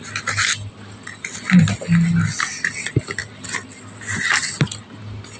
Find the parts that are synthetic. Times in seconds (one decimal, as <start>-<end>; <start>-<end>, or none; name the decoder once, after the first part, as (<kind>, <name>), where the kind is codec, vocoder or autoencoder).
none

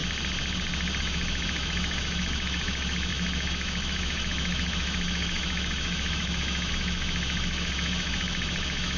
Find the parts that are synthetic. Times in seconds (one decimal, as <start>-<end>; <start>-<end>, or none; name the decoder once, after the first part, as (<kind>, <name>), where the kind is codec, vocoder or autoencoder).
1.0-9.0 (autoencoder, DAC-VAE)